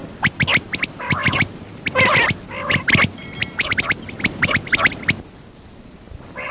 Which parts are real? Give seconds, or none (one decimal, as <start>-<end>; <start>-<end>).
0.0-6.5